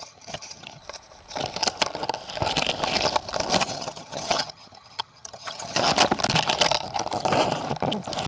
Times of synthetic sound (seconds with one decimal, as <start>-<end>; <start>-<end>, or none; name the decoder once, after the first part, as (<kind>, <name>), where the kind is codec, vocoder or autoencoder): 0.0-0.8 (vocoder, HiFi-GAN); 3.6-5.9